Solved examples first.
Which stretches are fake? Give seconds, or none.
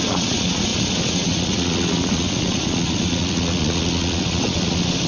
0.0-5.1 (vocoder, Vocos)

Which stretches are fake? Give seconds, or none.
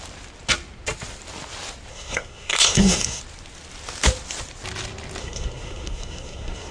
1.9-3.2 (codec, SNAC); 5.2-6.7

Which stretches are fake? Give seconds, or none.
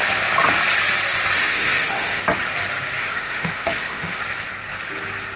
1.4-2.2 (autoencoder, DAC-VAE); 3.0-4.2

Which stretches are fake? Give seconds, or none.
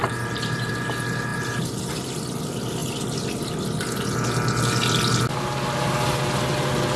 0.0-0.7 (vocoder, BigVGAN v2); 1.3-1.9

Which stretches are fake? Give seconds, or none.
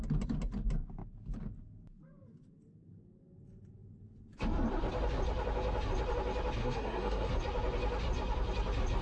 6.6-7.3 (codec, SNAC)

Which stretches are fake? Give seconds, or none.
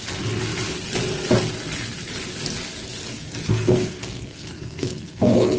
3.1-5.6 (codec, SNAC)